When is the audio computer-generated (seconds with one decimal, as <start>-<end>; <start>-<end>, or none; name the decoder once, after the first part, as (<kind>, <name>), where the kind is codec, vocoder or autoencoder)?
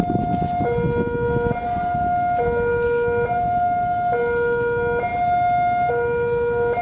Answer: none